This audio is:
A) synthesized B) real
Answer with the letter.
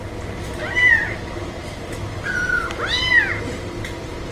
B